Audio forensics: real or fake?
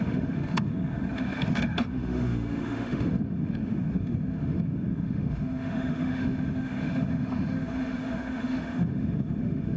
fake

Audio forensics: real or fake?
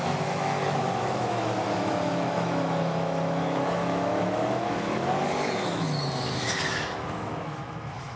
fake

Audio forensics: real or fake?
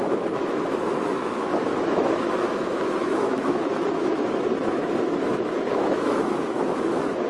fake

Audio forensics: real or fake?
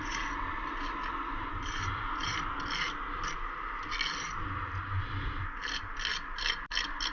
real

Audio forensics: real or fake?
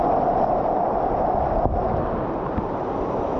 real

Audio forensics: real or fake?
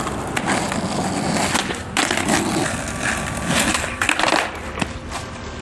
real